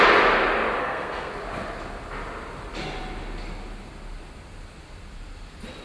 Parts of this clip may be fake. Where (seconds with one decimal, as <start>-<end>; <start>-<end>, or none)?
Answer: 0.8-1.3